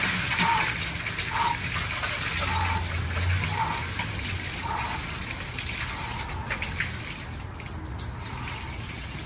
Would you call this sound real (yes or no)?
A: yes